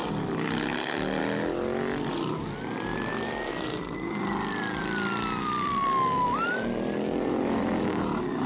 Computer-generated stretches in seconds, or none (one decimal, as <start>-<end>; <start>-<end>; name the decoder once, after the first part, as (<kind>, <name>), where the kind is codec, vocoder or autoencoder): 2.9-8.0 (vocoder, BigVGAN v2)